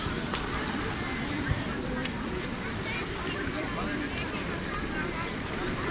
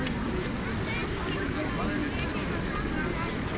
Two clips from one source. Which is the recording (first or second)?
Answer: second